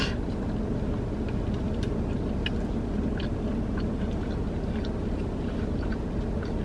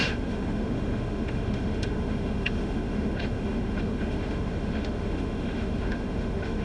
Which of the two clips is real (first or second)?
first